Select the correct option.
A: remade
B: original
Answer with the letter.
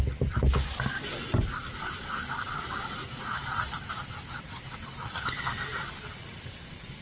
A